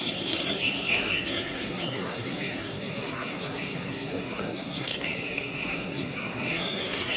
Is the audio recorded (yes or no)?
no